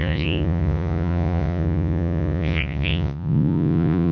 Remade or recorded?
remade